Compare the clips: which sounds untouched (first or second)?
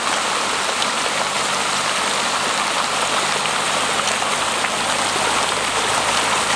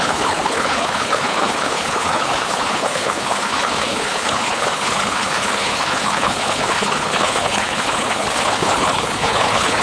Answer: first